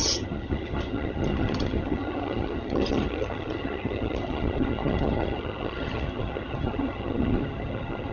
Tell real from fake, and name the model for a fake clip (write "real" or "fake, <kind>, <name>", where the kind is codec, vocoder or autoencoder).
fake, vocoder, HiFi-GAN